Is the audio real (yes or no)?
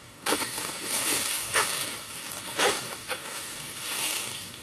no